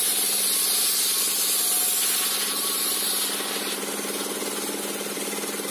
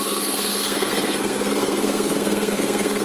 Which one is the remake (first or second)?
second